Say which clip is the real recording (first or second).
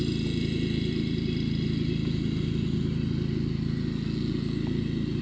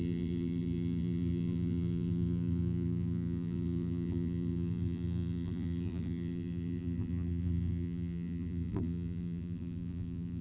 first